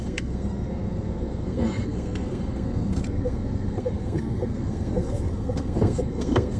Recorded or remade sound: remade